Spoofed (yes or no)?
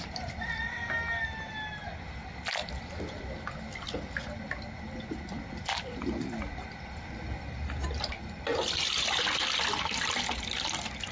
no